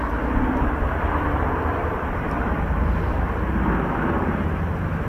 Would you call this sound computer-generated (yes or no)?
yes